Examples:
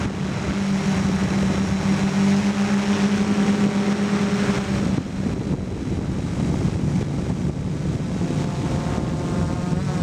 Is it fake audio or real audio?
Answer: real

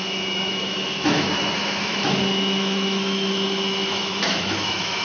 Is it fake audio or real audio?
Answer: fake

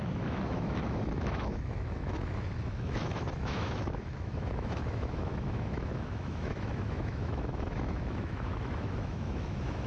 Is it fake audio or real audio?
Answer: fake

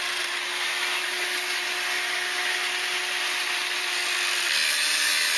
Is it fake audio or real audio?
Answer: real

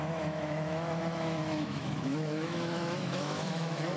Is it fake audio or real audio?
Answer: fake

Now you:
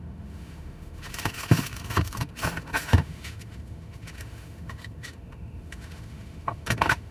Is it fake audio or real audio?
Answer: fake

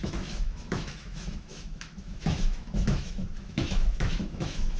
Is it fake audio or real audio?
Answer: fake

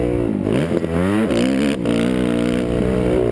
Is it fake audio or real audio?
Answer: real